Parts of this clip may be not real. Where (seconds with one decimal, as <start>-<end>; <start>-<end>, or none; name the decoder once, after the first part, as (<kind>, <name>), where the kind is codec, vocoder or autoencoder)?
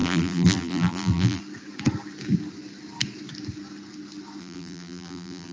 0.0-1.4 (vocoder, BigVGAN v2); 4.4-5.5